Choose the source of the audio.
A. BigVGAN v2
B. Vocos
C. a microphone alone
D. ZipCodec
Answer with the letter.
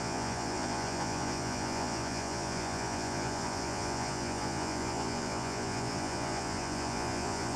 B